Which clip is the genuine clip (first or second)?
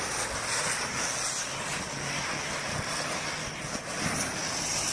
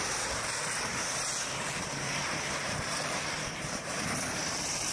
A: first